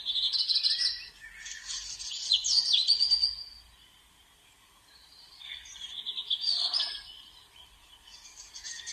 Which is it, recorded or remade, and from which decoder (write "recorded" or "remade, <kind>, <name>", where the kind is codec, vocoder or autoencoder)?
recorded